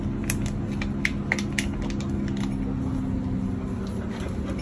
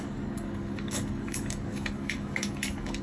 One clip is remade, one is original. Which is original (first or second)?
first